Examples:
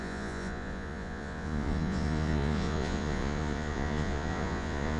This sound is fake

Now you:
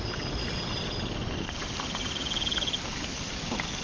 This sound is real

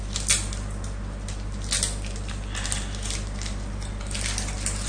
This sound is real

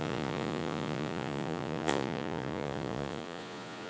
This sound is fake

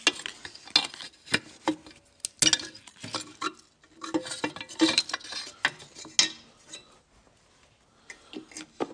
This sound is real